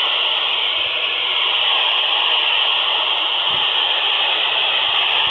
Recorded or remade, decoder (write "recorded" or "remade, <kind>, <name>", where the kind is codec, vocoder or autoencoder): recorded